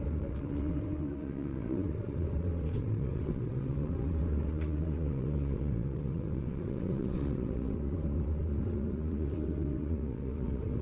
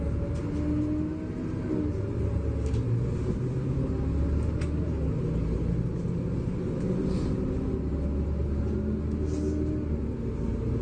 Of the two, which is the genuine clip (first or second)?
second